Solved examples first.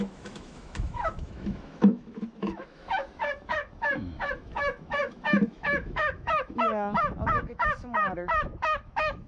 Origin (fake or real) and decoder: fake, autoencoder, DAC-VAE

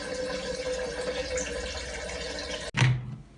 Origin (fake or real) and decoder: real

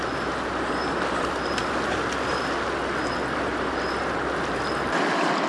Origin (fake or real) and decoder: real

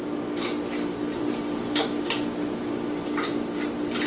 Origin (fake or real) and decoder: real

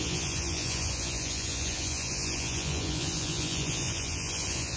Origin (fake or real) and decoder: fake, vocoder, Vocos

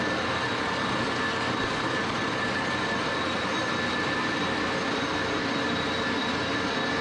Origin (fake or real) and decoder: real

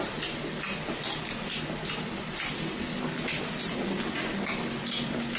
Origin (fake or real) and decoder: real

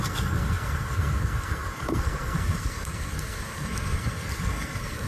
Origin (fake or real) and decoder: fake, codec, SNAC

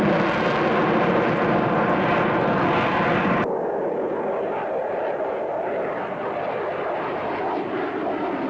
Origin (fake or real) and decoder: real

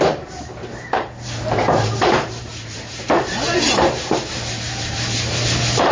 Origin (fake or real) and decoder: fake, vocoder, BigVGAN v2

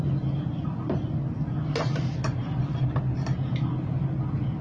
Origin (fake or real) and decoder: real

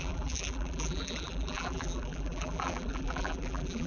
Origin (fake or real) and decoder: fake, vocoder, BigVGAN v2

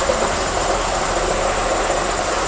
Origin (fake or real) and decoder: real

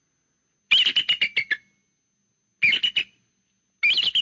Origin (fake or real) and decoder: real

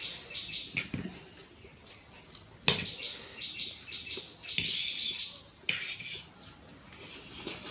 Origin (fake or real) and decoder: real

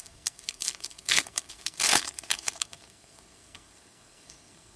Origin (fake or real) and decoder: fake, codec, SNAC